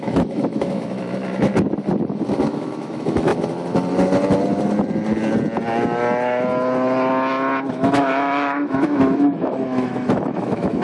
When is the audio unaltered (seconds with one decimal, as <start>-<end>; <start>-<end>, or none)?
1.5-2.5; 3.3-7.7